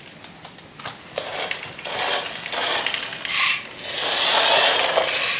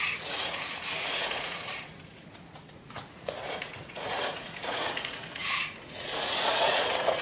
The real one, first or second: first